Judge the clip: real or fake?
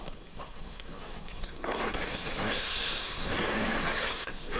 fake